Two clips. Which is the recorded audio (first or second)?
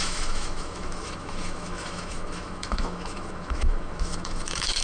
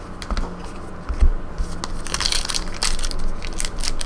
second